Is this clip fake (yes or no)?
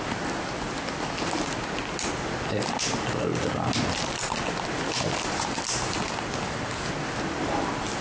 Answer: no